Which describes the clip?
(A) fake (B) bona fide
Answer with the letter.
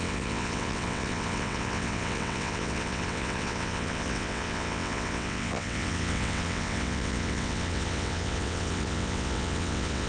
A